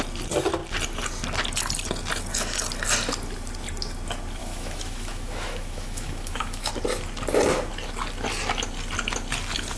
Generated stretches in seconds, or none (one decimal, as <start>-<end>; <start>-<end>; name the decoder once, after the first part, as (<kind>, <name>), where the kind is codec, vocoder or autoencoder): 4.4-6.7 (autoencoder, DAC-VAE)